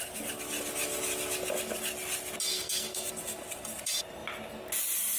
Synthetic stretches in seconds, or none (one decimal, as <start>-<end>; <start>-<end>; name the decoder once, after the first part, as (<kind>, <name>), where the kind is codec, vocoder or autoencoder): 2.5-3.1 (codec, SNAC)